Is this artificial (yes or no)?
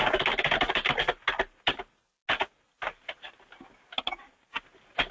no